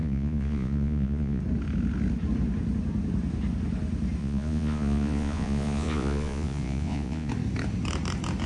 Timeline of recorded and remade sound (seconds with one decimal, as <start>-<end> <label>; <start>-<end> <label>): 0.0-1.4 remade; 1.4-4.2 recorded; 4.2-7.3 remade; 7.3-8.5 recorded